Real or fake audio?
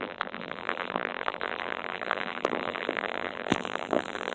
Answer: fake